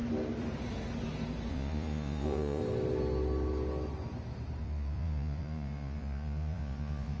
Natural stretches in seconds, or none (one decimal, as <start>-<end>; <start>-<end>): 0.0-1.5; 2.6-4.6